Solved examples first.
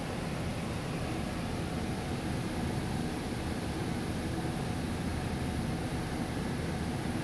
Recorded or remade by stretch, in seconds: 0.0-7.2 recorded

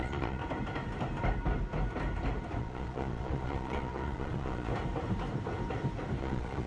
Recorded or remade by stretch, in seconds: 0.0-0.4 remade; 0.4-2.6 recorded; 2.6-4.7 remade; 4.7-6.2 recorded; 6.2-6.7 remade

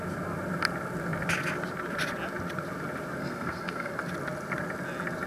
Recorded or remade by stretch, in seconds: 0.0-3.2 recorded; 3.2-3.9 remade; 3.9-5.3 recorded